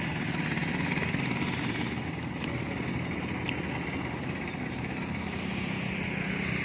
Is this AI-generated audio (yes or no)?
no